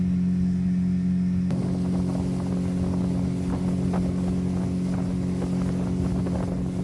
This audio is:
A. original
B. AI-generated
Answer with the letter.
A